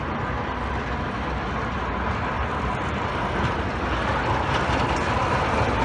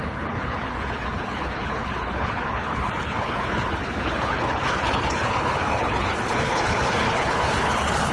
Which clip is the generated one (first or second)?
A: second